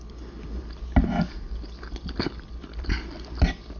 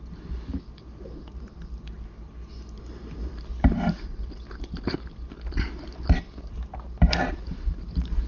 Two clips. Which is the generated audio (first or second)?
second